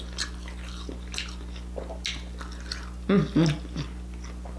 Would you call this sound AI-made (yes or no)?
no